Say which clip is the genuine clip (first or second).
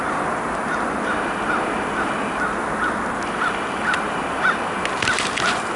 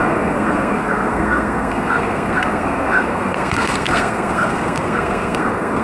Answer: first